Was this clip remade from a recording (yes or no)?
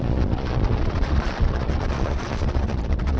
yes